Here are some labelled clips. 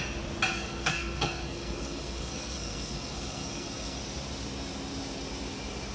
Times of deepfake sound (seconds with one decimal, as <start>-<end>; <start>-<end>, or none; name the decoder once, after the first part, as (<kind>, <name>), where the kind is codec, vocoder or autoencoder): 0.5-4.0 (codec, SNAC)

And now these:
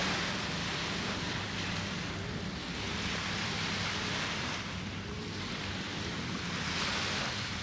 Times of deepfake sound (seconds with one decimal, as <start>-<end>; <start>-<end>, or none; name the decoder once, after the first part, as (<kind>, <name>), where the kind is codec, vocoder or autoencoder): none

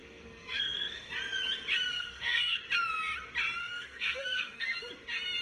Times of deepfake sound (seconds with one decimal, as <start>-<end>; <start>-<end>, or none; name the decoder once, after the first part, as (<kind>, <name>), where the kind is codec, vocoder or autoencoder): 0.0-1.1 (codec, SNAC); 1.9-2.6; 3.6-4.8